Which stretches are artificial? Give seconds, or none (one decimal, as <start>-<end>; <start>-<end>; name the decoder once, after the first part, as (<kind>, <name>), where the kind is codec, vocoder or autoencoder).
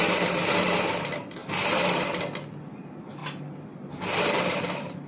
none